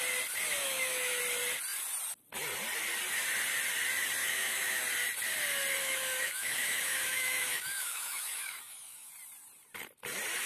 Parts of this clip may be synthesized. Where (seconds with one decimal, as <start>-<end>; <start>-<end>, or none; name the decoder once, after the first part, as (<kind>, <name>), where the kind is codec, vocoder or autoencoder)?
0.6-1.2 (autoencoder, DAC-VAE); 4.2-4.8; 5.8-9.1